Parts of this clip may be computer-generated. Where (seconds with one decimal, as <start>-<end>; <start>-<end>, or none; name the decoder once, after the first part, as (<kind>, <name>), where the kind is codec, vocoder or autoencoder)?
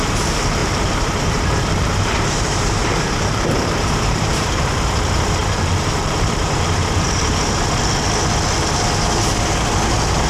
0.6-4.8 (vocoder, BigVGAN v2); 5.4-7.3